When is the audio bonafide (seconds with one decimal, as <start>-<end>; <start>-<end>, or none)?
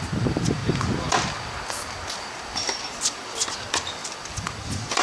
0.0-5.0